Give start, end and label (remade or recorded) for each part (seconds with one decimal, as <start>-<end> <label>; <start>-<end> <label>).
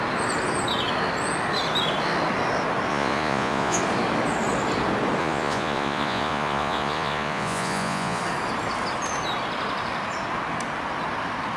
0.0-2.9 recorded; 2.9-3.8 remade; 3.8-5.2 recorded; 5.2-8.2 remade; 8.2-11.6 recorded